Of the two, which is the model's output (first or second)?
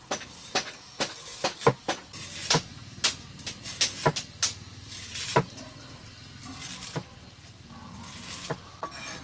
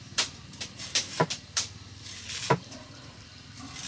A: second